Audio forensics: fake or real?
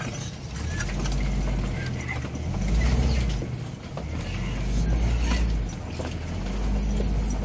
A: real